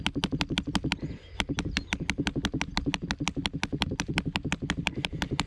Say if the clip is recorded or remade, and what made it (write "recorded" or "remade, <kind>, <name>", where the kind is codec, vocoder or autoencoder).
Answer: recorded